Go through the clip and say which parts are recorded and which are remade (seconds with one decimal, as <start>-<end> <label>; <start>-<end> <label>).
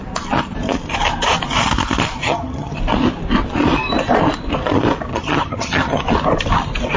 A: 0.0-2.2 recorded; 2.2-2.8 remade; 2.8-5.1 recorded; 5.1-6.0 remade; 6.0-7.0 recorded